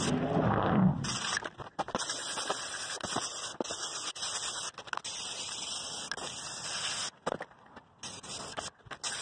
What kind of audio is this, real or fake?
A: real